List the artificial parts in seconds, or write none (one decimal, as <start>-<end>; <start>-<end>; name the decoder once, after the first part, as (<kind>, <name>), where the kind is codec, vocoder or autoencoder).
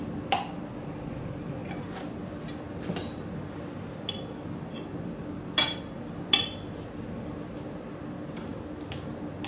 none